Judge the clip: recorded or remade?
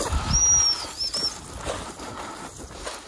recorded